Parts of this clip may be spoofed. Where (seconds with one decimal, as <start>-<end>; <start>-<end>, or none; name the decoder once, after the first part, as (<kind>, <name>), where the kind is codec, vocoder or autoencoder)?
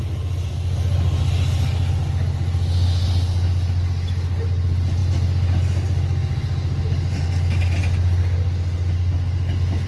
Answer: none